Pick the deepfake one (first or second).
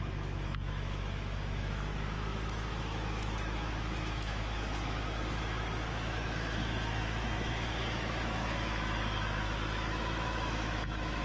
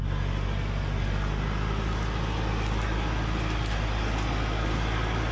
first